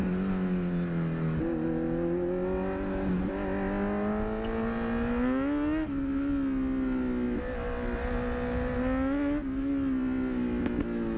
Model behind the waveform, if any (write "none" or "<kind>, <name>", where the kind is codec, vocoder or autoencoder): none